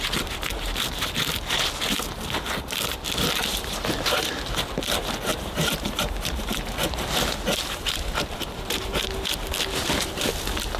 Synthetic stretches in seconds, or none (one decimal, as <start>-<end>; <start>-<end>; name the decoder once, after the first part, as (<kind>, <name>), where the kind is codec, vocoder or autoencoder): 3.5-4.2 (vocoder, BigVGAN v2); 5.3-9.0